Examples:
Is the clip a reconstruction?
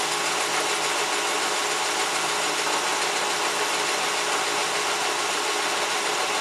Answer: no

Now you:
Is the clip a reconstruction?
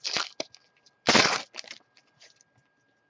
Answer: no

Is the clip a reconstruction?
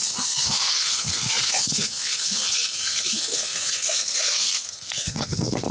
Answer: yes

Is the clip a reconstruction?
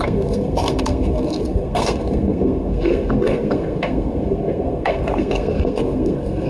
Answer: yes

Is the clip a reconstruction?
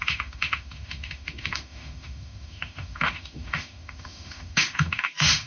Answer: yes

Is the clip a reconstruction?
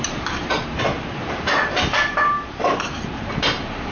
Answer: yes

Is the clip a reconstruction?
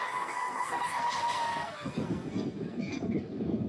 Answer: yes